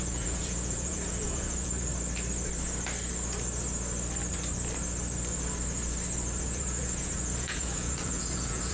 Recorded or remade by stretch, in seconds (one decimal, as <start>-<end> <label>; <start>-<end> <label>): 0.0-1.9 remade; 1.9-6.4 recorded; 6.4-8.7 remade